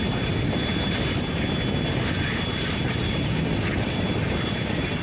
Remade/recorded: recorded